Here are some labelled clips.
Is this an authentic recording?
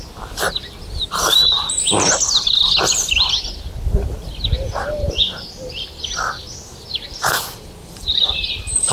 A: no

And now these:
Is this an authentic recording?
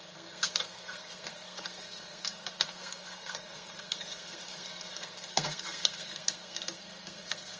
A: no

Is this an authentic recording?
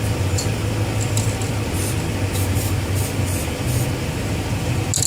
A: yes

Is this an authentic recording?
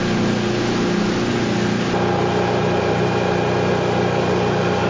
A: yes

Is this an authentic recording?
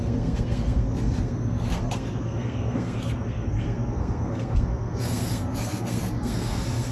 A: no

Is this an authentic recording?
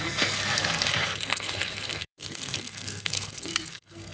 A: no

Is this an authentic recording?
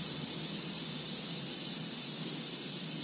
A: yes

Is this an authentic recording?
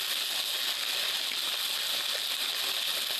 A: yes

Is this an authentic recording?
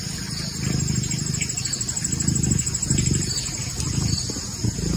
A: yes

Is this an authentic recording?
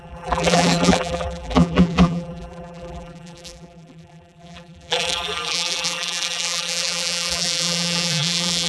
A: no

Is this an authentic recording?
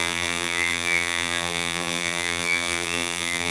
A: no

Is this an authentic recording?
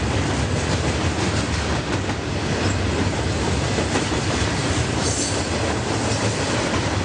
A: yes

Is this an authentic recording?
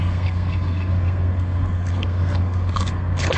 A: no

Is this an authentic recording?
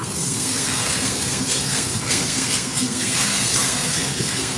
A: no